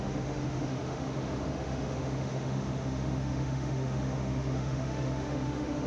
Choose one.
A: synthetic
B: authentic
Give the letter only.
A